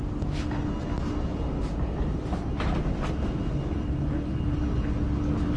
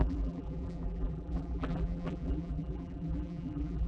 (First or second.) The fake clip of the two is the second